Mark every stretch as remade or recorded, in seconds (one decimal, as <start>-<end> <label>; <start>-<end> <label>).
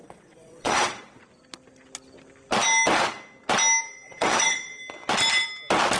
0.0-1.2 remade; 1.2-3.8 recorded; 3.8-4.8 remade; 4.8-6.0 recorded